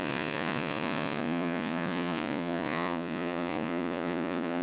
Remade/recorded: remade